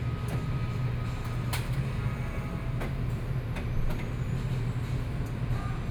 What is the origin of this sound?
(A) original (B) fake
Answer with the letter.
A